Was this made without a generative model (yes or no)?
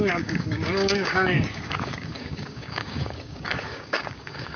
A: no